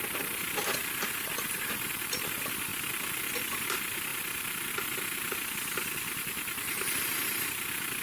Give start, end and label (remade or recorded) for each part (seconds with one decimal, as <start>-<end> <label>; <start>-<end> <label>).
0.0-8.0 recorded